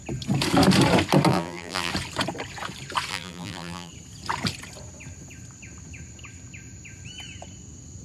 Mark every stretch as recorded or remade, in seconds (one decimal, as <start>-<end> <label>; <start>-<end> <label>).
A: 0.0-1.3 recorded; 1.3-1.9 remade; 1.9-3.1 recorded; 3.1-3.9 remade; 3.9-8.0 recorded